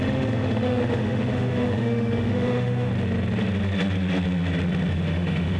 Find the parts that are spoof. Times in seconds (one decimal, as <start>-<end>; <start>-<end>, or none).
0.0-2.9; 4.9-5.6